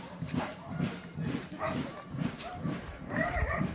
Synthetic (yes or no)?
yes